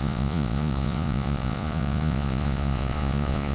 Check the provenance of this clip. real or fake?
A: fake